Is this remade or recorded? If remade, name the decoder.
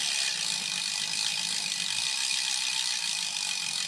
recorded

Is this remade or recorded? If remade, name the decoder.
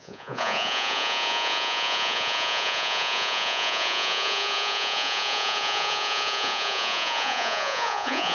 remade, vocoder, Vocos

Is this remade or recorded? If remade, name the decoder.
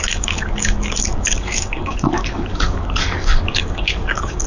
remade, codec, DAC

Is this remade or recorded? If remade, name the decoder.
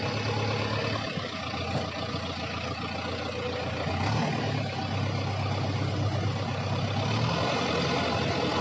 recorded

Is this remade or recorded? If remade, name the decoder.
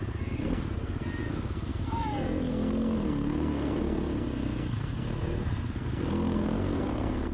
remade, codec, SNAC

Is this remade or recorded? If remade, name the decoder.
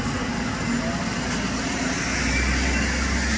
recorded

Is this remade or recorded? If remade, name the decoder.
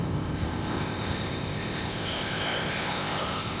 remade, codec, ZipCodec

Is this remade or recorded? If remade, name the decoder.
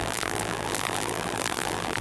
remade, vocoder, BigVGAN v2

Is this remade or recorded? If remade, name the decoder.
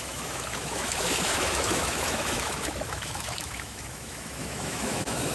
remade, autoencoder, DAC-VAE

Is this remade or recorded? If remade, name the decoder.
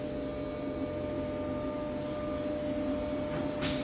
recorded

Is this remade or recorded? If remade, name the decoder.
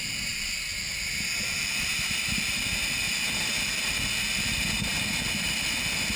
recorded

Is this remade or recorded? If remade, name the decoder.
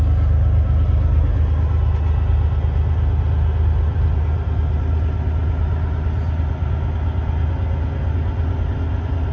recorded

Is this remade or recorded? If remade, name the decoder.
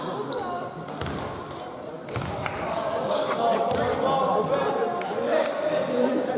recorded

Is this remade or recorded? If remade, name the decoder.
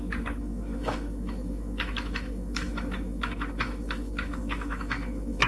remade, autoencoder, DAC-VAE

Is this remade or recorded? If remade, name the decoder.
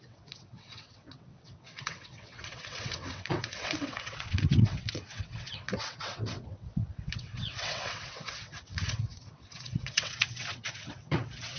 remade, vocoder, WaveNeXt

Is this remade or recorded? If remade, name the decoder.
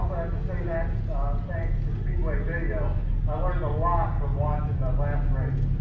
recorded